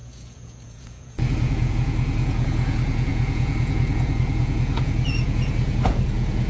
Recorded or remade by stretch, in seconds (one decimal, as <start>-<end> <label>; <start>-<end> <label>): 0.0-6.5 remade